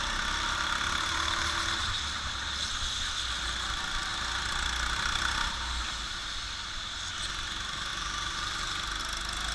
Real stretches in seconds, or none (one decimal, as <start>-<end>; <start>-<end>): 0.0-7.9; 9.0-9.5